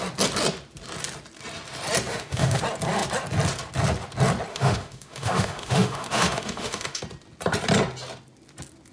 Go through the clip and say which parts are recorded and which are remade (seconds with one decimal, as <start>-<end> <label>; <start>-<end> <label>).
0.0-2.1 recorded; 2.1-2.6 remade; 2.6-4.5 recorded; 4.5-7.0 remade; 7.0-8.9 recorded

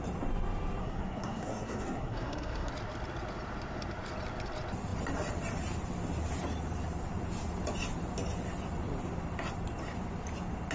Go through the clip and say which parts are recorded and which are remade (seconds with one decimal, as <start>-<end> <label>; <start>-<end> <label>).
0.0-0.8 recorded; 0.8-2.7 remade; 2.7-10.7 recorded

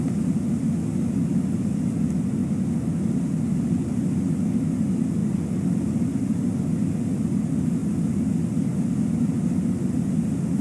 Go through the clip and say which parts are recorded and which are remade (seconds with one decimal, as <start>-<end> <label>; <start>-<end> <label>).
0.0-10.6 recorded

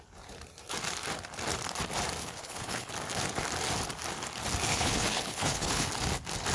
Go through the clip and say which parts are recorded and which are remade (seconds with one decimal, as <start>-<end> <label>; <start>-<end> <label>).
0.0-2.2 recorded; 2.2-2.9 remade; 2.9-4.7 recorded; 4.7-5.9 remade; 5.9-6.5 recorded

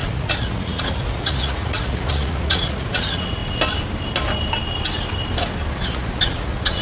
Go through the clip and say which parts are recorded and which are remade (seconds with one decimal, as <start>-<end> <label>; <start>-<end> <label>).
0.0-3.4 remade; 3.4-5.8 recorded; 5.8-6.8 remade

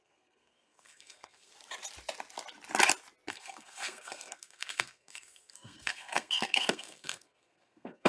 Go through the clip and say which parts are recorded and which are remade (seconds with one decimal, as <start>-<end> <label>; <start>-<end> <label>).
0.0-1.5 remade; 1.5-3.3 recorded; 3.3-8.1 remade

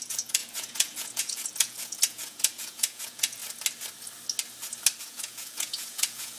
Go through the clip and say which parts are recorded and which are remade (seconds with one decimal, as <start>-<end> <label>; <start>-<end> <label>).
0.0-3.4 remade; 3.4-5.0 recorded; 5.0-6.4 remade